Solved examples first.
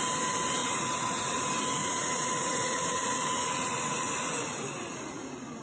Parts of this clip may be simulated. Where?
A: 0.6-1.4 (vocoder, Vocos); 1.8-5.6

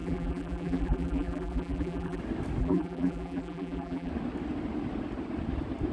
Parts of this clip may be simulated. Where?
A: 0.0-2.2 (vocoder, BigVGAN v2); 2.6-4.1

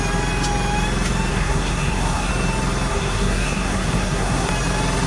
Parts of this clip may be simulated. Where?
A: 1.3-2.3 (codec, SNAC); 2.9-4.5

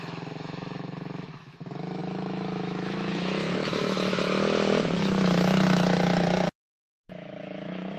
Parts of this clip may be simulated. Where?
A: 0.0-8.0 (autoencoder, DAC-VAE)

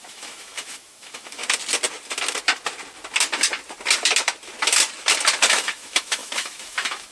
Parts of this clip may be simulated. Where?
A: 0.0-1.4 (autoencoder, DAC-VAE); 5.5-7.1

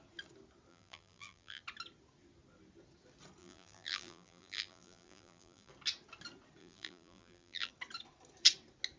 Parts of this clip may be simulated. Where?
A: 0.7-1.6 (vocoder, BigVGAN v2); 3.4-5.7; 6.6-7.7